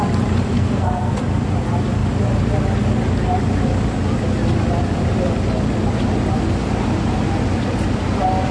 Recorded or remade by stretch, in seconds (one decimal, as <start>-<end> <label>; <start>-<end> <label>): 0.0-0.5 recorded; 0.5-1.2 remade; 1.2-8.5 recorded